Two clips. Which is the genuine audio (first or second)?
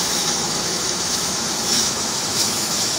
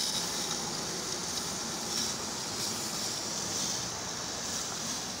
second